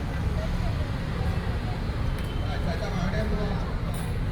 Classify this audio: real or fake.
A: real